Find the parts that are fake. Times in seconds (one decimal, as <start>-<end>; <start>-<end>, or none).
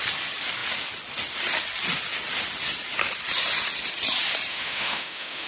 4.5-5.5